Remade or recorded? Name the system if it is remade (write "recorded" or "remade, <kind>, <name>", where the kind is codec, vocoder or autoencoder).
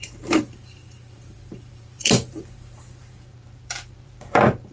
remade, vocoder, BigVGAN v2